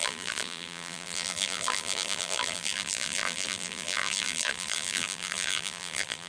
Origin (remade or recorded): remade